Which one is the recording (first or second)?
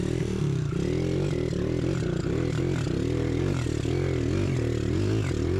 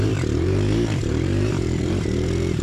first